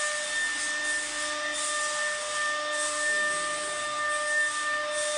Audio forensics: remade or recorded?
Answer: recorded